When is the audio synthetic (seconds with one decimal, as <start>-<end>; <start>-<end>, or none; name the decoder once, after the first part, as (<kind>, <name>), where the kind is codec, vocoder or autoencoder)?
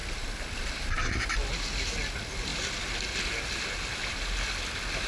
2.5-3.5 (vocoder, BigVGAN v2)